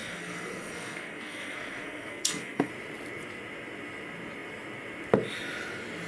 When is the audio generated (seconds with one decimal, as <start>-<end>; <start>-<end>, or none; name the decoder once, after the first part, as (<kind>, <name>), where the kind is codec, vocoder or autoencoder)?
0.0-2.7 (codec, SNAC)